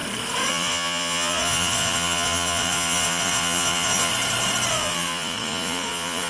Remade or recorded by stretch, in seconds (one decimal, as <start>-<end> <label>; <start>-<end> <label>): 0.0-0.5 recorded; 0.5-4.1 remade; 4.1-4.7 recorded; 4.7-6.3 remade